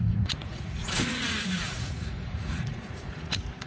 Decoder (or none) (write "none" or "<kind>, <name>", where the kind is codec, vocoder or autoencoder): vocoder, Vocos